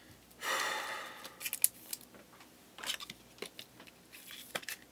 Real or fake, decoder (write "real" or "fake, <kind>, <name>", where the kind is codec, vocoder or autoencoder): real